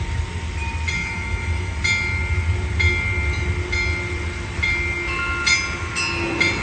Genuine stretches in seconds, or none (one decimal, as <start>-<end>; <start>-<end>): 0.0-1.0; 1.8-6.6